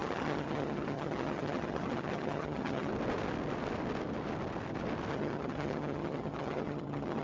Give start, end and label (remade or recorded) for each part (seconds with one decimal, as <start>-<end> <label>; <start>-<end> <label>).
0.0-2.9 remade; 2.9-5.1 recorded; 5.1-7.2 remade